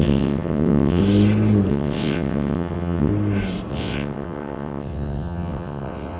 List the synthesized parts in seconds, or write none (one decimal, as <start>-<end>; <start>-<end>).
0.0-1.0; 1.7-3.1; 3.7-6.2